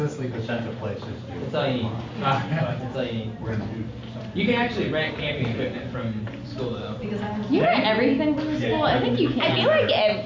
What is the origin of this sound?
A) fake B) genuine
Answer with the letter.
B